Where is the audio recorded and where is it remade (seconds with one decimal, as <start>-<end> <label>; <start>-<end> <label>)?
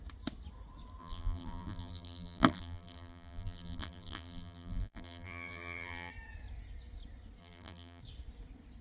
0.0-1.0 recorded; 1.0-6.1 remade; 6.1-7.4 recorded; 7.4-8.0 remade; 8.0-8.8 recorded